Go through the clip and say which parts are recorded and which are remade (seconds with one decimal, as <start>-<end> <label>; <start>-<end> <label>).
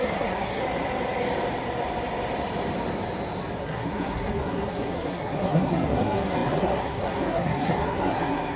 0.0-0.6 remade; 0.6-3.6 recorded; 3.6-8.6 remade